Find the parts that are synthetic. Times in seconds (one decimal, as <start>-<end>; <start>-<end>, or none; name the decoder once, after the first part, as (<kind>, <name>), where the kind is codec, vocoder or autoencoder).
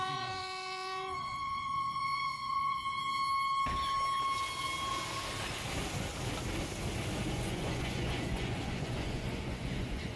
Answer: 0.0-2.8 (vocoder, Vocos); 7.3-10.2